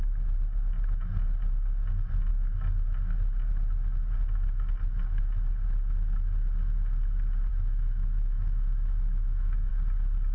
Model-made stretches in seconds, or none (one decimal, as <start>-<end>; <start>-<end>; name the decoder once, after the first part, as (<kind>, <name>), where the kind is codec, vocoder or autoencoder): 7.5-9.7 (autoencoder, DAC-VAE)